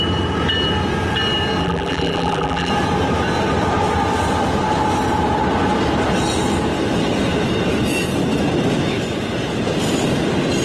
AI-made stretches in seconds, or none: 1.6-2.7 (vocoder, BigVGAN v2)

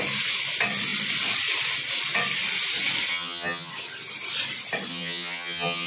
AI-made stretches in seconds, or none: 3.1-3.7 (vocoder, HiFi-GAN); 4.9-5.9

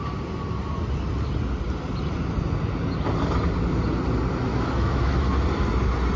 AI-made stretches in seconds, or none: 4.5-5.2 (autoencoder, DAC-VAE)

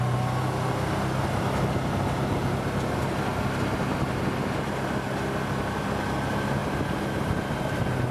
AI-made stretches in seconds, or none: none